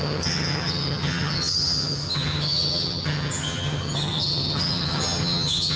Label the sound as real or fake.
fake